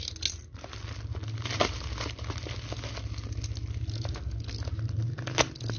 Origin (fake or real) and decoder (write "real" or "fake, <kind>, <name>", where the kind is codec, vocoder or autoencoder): real